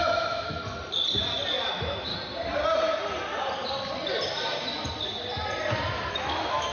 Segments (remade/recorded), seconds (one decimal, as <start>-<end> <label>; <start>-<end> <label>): 0.0-0.6 remade; 0.6-1.7 recorded; 1.7-2.1 remade; 2.1-6.1 recorded; 6.1-6.7 remade